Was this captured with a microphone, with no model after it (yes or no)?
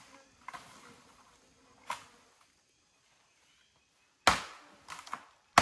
yes